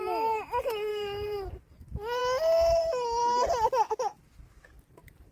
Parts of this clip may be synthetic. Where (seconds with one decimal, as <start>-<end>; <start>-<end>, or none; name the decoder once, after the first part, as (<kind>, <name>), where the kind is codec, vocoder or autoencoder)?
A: 0.9-1.5 (codec, SNAC)

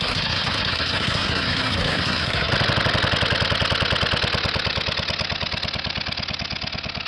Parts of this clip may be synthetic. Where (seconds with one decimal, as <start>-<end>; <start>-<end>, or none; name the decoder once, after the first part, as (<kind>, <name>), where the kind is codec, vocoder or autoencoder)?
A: 0.0-2.5 (codec, SNAC)